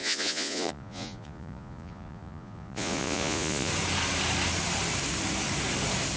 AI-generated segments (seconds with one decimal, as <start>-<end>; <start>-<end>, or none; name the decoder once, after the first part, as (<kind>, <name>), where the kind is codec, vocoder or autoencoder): 0.0-3.7 (vocoder, Vocos)